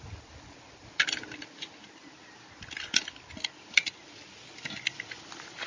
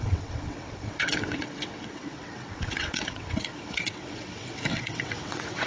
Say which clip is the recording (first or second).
first